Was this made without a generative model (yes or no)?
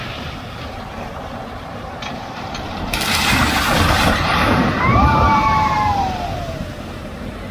no